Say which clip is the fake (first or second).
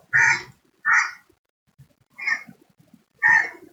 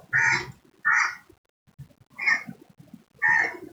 first